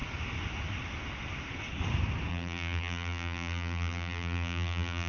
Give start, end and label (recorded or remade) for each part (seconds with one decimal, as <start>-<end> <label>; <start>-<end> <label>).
0.0-2.3 recorded; 2.3-5.1 remade